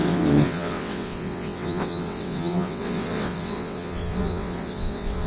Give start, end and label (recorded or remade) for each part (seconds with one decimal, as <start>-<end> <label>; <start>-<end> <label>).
0.0-5.3 remade